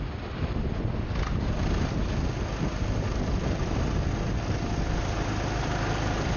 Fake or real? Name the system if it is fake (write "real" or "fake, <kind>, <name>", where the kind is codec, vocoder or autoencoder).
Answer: real